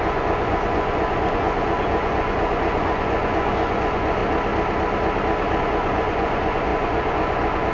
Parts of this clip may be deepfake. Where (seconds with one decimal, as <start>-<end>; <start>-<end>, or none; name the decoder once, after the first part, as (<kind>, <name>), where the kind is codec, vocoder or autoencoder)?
0.0-4.2 (vocoder, Vocos); 5.6-7.7